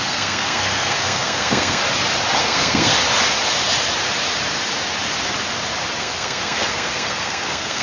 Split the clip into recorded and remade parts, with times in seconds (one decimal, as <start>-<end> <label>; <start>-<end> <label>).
0.0-1.8 remade; 1.8-2.4 recorded; 2.4-2.9 remade; 2.9-6.0 recorded; 6.0-7.8 remade